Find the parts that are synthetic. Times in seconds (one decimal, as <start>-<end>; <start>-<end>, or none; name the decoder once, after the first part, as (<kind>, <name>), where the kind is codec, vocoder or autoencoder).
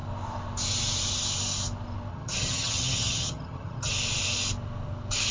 2.1-3.9 (vocoder, HiFi-GAN)